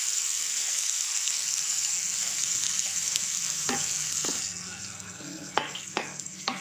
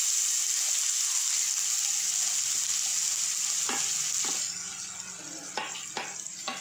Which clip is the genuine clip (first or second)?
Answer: second